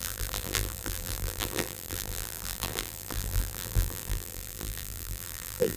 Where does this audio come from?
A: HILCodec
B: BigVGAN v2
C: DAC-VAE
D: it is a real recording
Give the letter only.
B